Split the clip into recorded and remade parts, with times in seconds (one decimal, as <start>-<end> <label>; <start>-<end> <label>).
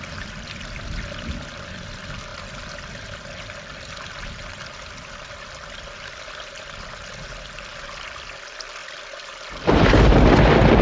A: 0.0-10.8 recorded